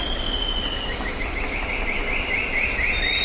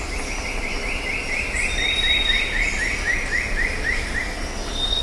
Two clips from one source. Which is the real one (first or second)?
second